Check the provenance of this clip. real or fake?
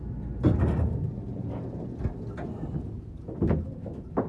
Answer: real